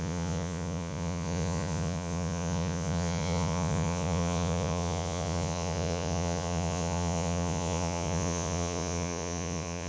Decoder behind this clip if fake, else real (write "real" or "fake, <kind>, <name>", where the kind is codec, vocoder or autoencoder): fake, vocoder, Vocos